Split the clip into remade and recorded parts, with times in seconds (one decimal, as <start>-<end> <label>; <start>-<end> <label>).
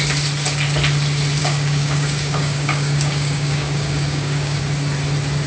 0.0-1.4 recorded; 1.4-4.6 remade; 4.6-5.5 recorded